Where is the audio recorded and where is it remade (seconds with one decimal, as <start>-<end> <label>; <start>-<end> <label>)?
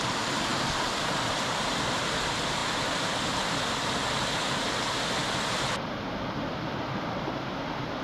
0.0-2.6 recorded; 2.6-3.6 remade; 3.6-8.0 recorded